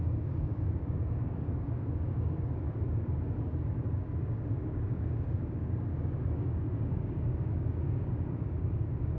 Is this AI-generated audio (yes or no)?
yes